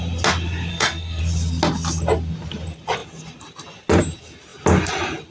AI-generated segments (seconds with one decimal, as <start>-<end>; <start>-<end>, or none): 0.7-1.2